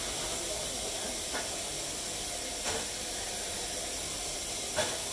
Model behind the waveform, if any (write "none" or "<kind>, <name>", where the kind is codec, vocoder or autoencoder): none